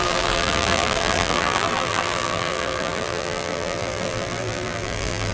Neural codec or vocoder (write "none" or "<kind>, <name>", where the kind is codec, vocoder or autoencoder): vocoder, BigVGAN v2